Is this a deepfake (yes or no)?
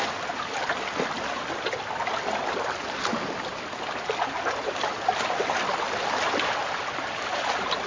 no